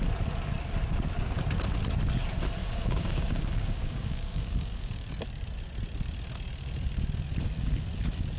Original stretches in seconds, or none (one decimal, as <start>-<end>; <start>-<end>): 0.0-2.6; 5.0-8.4